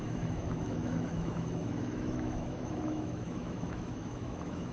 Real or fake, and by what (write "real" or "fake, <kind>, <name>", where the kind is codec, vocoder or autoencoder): fake, autoencoder, DAC-VAE